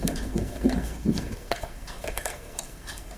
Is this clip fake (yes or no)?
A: yes